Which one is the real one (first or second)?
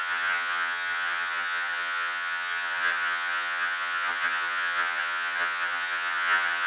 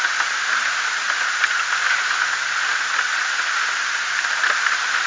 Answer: second